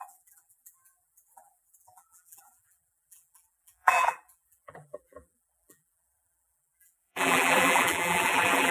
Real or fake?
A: fake